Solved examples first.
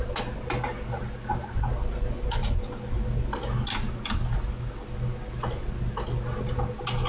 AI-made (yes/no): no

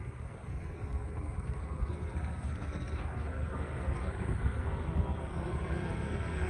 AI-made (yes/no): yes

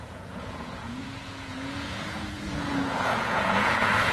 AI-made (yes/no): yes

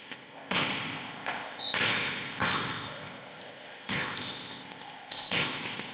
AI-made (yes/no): yes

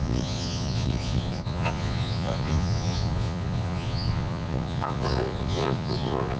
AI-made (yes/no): yes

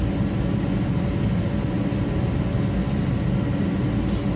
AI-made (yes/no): no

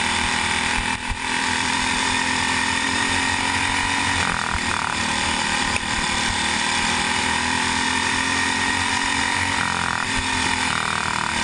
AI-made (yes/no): yes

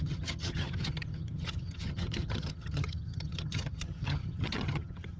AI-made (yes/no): yes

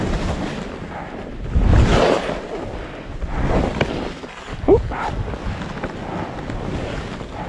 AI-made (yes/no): no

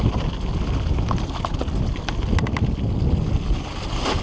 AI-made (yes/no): no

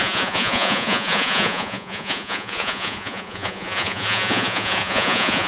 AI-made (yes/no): yes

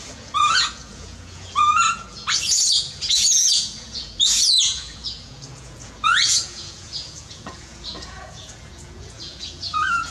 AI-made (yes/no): yes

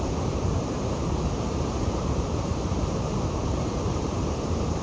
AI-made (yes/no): yes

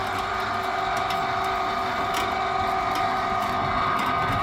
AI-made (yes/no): no